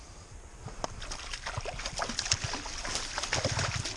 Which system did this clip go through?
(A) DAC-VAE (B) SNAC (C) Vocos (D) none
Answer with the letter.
D